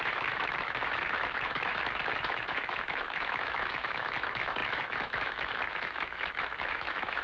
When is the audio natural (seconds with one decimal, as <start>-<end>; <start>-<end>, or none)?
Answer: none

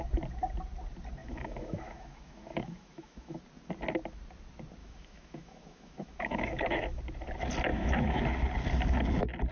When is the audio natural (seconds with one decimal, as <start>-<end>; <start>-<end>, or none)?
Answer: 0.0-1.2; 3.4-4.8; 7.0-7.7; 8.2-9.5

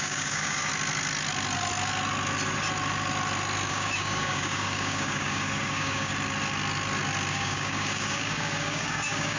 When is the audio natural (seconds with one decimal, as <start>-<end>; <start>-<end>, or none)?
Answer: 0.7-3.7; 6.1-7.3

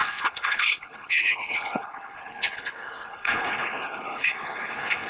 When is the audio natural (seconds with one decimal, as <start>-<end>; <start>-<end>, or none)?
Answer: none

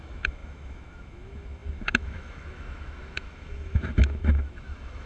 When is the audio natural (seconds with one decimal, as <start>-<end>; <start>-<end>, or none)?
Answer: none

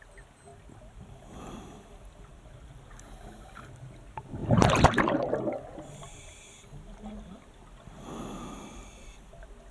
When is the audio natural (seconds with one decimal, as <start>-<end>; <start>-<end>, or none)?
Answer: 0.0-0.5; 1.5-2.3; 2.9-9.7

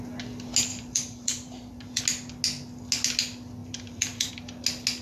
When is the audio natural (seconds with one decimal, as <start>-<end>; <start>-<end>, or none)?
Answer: 0.0-0.7; 2.0-3.6; 4.3-5.0